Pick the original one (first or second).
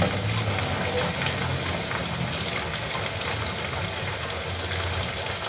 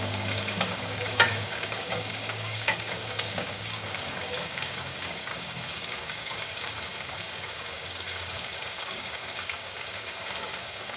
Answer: first